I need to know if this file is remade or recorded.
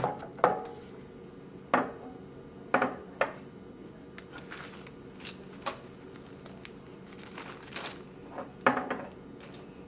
recorded